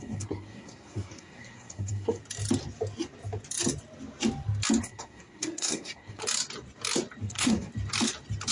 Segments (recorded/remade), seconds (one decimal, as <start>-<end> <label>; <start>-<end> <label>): 0.0-2.2 remade; 2.2-4.8 recorded; 4.8-6.2 remade; 6.2-7.2 recorded; 7.2-7.7 remade; 7.7-8.5 recorded